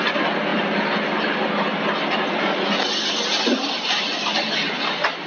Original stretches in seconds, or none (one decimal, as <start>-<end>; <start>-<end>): 0.0-5.3